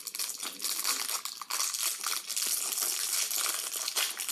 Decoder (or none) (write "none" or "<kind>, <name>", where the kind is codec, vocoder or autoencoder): none